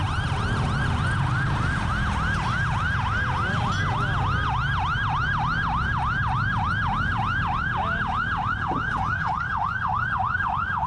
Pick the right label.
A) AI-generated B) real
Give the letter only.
B